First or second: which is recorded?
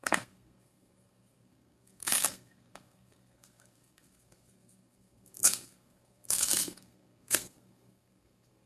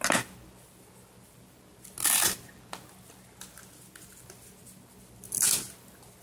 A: second